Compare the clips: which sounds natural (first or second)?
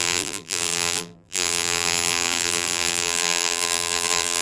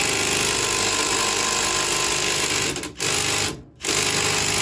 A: second